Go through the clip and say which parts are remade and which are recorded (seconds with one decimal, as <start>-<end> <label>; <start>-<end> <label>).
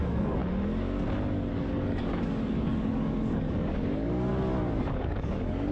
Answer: 0.0-0.4 remade; 0.4-1.5 recorded; 1.5-4.3 remade; 4.3-4.9 recorded; 4.9-5.7 remade